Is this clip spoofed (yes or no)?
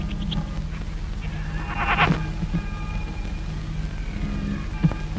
no